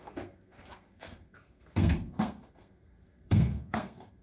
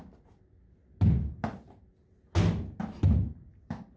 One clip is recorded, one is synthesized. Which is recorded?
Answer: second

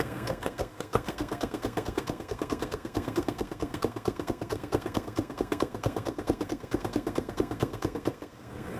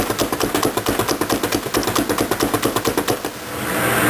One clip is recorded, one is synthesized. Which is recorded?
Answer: second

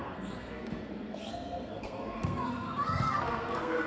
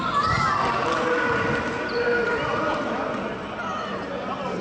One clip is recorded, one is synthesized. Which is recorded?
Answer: second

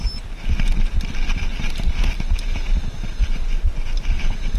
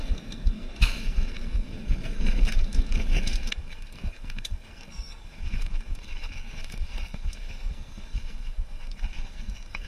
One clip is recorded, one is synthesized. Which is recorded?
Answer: first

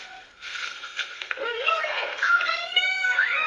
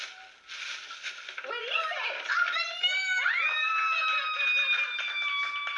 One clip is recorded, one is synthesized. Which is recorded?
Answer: second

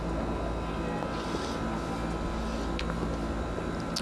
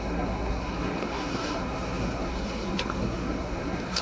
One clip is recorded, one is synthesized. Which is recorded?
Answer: first